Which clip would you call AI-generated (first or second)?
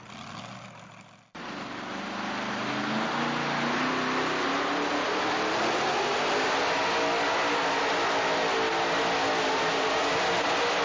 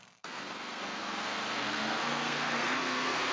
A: second